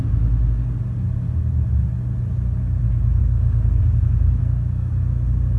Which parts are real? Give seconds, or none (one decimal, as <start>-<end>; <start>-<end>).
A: 0.0-3.2; 3.8-4.4; 4.9-5.6